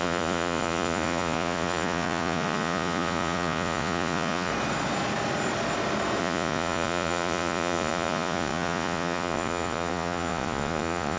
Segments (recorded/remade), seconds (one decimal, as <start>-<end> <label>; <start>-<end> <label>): 0.0-4.5 remade; 4.5-6.2 recorded; 6.2-11.2 remade